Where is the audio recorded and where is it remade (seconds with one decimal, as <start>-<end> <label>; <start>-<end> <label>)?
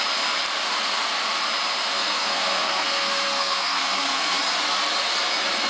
0.0-2.0 recorded; 2.0-4.4 remade; 4.4-5.7 recorded